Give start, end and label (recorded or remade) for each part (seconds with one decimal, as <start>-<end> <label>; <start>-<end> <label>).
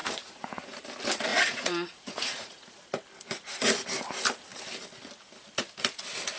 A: 0.0-0.8 remade; 0.8-1.3 recorded; 1.3-2.8 remade; 2.8-6.4 recorded